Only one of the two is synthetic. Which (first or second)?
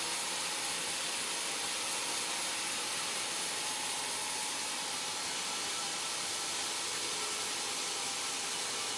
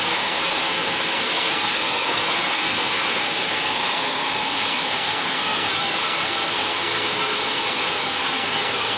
second